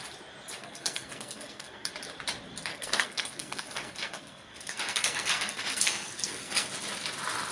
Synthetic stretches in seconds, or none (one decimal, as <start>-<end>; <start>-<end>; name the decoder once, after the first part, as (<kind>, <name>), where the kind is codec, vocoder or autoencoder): 0.6-1.9 (codec, SNAC); 2.7-6.7